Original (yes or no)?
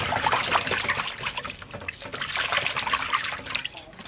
yes